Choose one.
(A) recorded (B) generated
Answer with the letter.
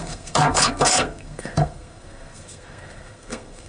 B